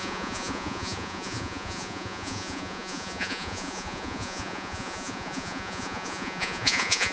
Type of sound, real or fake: fake